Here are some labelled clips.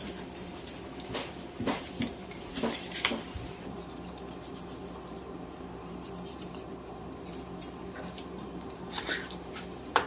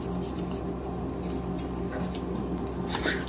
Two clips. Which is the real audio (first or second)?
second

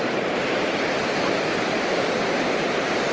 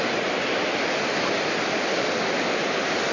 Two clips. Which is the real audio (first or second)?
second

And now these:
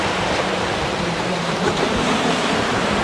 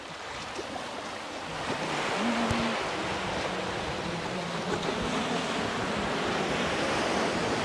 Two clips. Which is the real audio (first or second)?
second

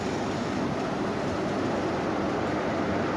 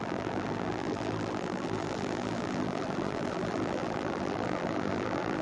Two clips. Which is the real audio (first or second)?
first